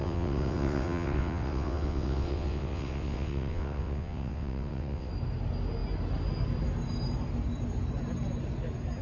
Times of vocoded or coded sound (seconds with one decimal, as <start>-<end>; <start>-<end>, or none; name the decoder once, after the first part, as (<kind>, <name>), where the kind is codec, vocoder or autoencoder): 0.0-5.1 (vocoder, WaveNeXt)